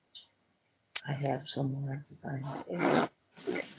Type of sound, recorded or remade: remade